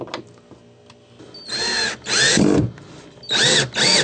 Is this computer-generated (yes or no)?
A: no